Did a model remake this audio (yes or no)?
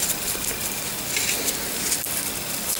no